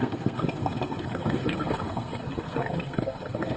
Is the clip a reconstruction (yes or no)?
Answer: yes